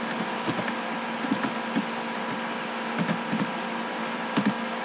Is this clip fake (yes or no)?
no